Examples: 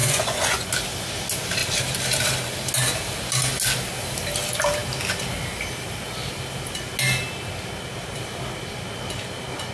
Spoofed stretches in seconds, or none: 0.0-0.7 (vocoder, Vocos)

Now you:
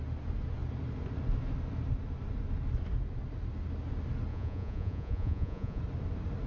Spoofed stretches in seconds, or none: 4.3-5.8 (vocoder, Vocos)

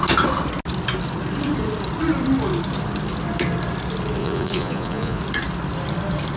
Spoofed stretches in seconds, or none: 4.2-5.2 (vocoder, Vocos)